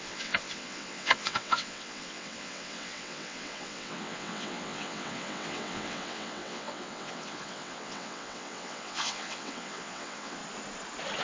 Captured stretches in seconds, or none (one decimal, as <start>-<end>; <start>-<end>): 10.4-11.2

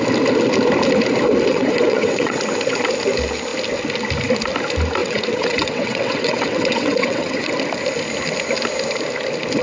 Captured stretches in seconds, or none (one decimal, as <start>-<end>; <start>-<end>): 0.0-1.5; 2.4-5.0; 7.5-9.6

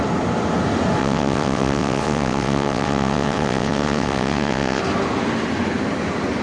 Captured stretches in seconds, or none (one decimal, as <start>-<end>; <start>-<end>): 0.0-1.0; 4.8-6.4

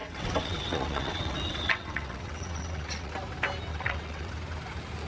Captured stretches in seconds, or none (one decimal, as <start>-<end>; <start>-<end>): 3.1-3.7; 4.3-5.1

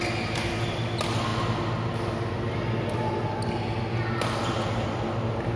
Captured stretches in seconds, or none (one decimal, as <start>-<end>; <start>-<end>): 0.0-5.6